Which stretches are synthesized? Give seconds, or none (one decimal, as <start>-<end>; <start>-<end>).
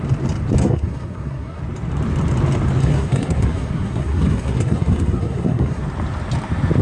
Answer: 0.6-1.6; 2.8-5.8